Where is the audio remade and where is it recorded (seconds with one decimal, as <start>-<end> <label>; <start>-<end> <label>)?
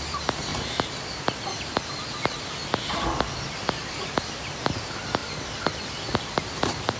0.0-0.5 remade; 0.5-3.0 recorded; 3.0-5.2 remade; 5.2-6.3 recorded; 6.3-7.0 remade